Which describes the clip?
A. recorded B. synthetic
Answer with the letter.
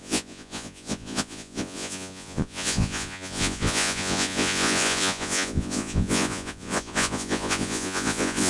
B